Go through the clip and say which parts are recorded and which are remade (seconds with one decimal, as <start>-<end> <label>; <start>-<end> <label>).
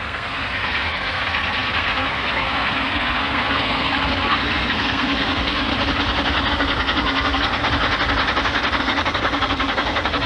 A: 0.0-5.7 remade; 5.7-6.5 recorded; 6.5-7.6 remade; 7.6-8.8 recorded; 8.8-10.3 remade